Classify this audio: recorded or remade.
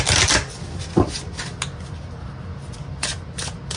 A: recorded